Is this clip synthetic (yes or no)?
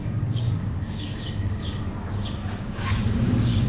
yes